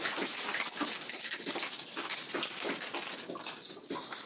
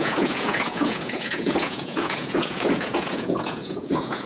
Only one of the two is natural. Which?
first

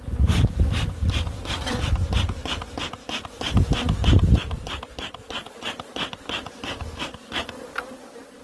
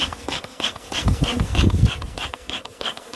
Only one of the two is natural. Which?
first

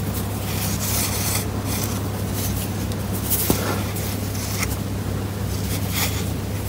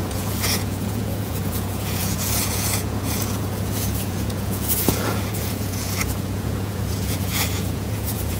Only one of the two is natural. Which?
first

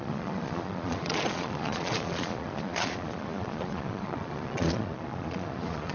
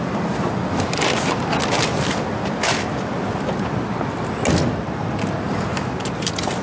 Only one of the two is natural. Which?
second